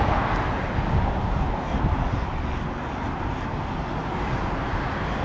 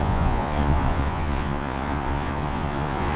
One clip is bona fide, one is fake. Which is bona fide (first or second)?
first